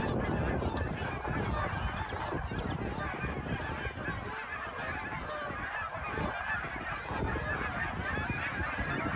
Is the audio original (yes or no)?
yes